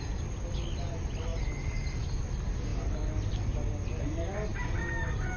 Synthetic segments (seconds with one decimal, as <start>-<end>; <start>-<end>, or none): none